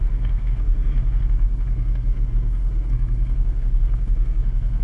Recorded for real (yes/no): no